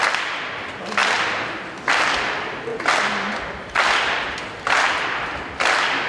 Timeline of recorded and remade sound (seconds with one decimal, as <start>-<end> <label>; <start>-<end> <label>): 0.0-6.1 recorded